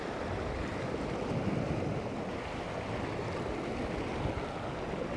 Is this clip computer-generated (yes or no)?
no